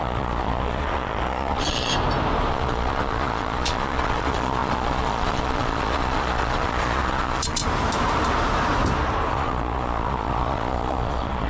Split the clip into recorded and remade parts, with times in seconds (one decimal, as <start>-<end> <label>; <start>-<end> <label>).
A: 0.0-1.9 remade; 1.9-2.5 recorded; 2.5-7.6 remade; 7.6-9.3 recorded; 9.3-11.5 remade